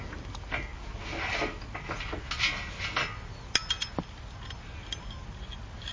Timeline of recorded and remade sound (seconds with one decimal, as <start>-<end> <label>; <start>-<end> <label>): 0.0-5.9 recorded